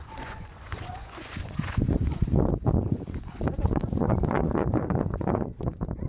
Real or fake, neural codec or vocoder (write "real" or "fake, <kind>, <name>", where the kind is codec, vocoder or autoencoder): fake, vocoder, Vocos